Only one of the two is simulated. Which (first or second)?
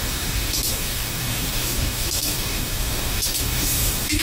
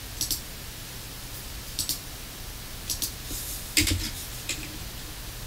first